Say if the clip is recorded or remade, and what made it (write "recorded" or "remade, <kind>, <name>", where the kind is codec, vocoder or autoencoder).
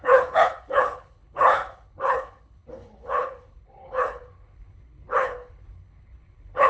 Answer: remade, codec, HILCodec